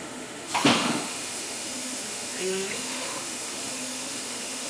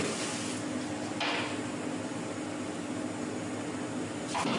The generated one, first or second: first